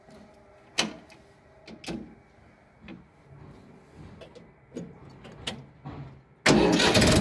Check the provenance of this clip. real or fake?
real